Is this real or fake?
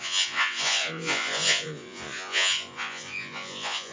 fake